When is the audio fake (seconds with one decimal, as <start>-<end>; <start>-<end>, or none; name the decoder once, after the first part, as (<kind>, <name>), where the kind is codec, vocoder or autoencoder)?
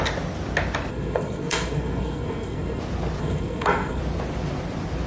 0.9-2.8 (codec, SNAC); 3.2-4.0